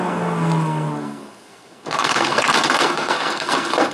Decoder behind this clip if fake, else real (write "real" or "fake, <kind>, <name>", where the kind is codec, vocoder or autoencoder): fake, codec, SNAC